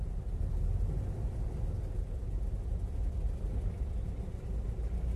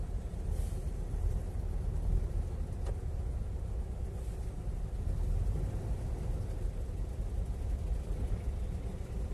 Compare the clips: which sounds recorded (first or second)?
first